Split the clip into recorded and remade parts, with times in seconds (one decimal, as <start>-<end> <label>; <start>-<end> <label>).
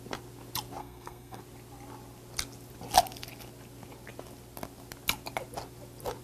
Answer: 0.0-0.8 recorded; 0.8-1.4 remade; 1.4-6.2 recorded